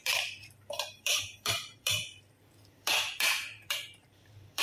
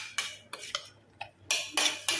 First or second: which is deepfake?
first